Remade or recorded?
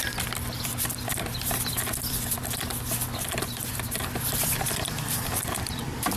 remade